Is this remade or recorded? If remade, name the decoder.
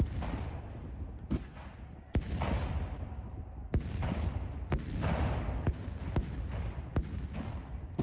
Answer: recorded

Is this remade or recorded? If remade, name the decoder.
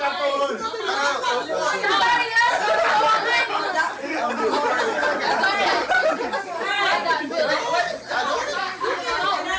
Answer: recorded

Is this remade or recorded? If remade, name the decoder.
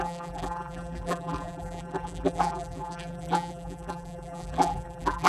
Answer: remade, vocoder, BigVGAN v2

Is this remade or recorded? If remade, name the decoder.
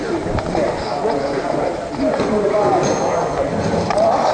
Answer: recorded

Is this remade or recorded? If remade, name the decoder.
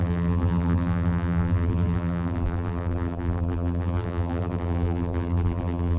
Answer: remade, vocoder, BigVGAN v2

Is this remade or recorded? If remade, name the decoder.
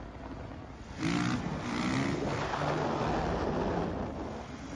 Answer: recorded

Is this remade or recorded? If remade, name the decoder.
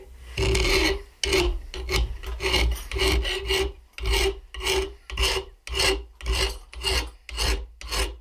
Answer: recorded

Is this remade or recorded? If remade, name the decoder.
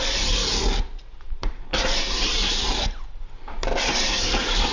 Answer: remade, vocoder, BigVGAN v2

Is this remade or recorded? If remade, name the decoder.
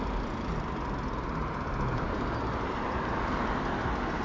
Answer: recorded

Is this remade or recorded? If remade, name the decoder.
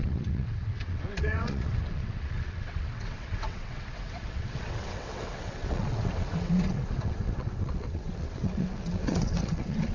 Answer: remade, vocoder, WaveNeXt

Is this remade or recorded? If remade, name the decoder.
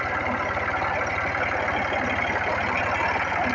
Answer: recorded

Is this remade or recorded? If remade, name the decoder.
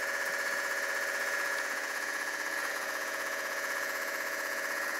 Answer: remade, vocoder, Vocos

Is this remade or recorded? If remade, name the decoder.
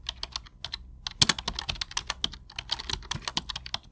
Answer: recorded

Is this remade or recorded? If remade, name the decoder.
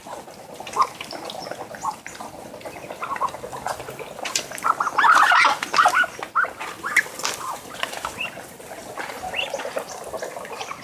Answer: recorded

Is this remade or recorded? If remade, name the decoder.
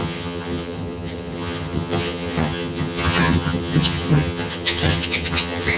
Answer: remade, vocoder, HiFi-GAN